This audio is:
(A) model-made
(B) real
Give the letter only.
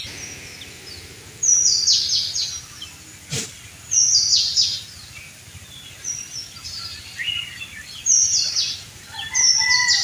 B